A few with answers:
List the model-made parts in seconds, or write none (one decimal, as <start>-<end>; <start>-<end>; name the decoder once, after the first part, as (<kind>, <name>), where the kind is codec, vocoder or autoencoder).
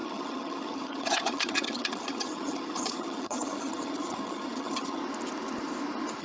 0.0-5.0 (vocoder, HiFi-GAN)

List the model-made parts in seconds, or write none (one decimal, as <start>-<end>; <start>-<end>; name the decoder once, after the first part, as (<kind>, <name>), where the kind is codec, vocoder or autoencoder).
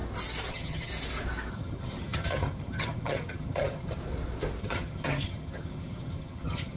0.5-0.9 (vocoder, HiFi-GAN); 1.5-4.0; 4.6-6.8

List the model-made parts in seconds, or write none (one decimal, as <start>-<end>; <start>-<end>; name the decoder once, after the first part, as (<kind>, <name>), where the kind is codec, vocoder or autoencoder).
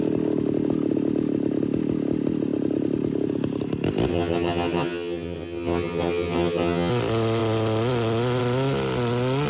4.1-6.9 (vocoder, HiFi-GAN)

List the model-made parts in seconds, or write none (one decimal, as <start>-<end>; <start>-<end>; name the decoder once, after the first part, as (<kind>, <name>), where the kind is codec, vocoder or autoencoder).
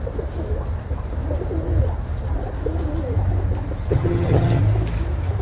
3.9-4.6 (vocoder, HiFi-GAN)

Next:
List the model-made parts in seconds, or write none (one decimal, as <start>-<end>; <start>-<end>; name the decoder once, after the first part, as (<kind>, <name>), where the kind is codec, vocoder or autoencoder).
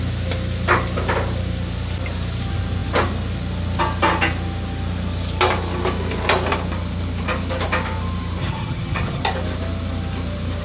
8.4-9.2 (vocoder, HiFi-GAN)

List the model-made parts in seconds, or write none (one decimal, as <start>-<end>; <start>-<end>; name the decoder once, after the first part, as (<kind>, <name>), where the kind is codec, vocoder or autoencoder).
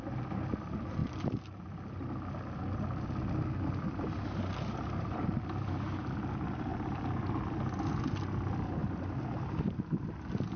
none